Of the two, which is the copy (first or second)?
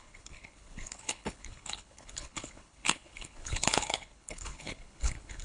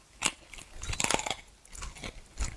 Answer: first